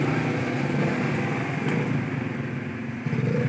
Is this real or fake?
real